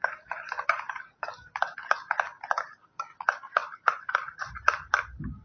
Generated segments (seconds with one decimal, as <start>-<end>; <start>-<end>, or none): 0.0-1.7; 3.2-5.4